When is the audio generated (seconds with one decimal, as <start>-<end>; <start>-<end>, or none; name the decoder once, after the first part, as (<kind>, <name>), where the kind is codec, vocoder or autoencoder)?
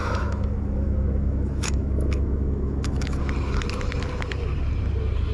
0.0-3.2 (autoencoder, DAC-VAE)